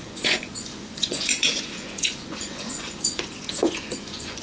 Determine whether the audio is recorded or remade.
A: remade